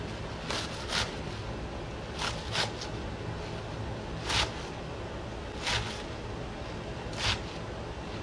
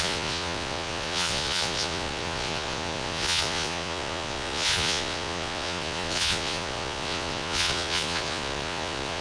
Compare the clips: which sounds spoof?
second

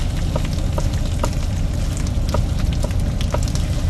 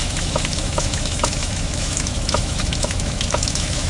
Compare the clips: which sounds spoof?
second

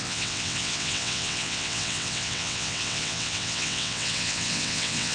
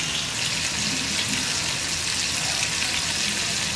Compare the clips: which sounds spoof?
first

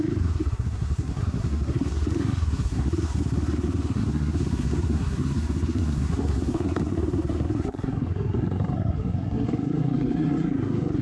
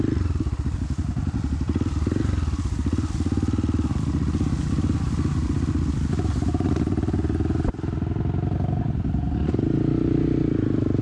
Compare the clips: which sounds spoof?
first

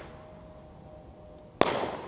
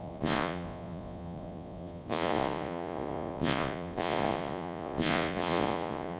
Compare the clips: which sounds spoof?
second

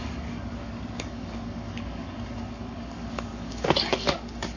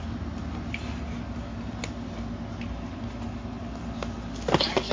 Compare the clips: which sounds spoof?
first